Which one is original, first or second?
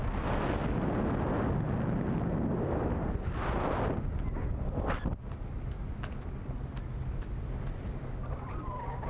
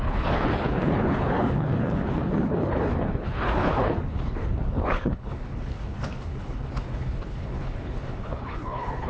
first